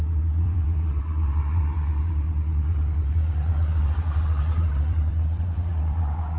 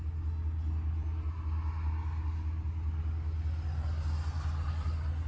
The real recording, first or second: second